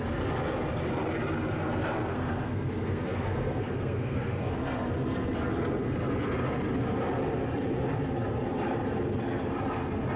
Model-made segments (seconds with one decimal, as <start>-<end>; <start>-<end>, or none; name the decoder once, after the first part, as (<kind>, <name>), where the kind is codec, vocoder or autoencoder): 2.1-4.5 (codec, SNAC)